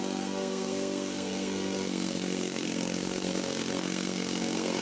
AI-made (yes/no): yes